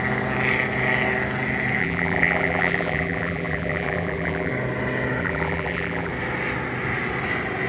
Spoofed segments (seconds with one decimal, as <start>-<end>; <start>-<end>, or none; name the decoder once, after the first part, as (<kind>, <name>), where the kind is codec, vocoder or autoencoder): 1.8-4.5 (vocoder, BigVGAN v2); 5.2-6.1